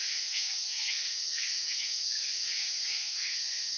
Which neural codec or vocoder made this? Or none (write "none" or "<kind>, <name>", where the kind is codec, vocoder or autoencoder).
codec, SNAC